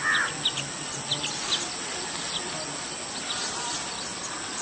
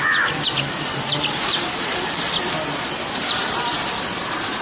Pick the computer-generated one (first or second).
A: second